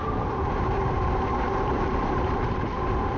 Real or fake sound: fake